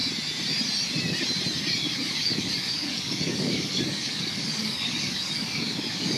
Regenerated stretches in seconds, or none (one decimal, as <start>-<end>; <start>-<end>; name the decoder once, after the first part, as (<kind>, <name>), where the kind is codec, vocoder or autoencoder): 1.8-6.2 (codec, DAC)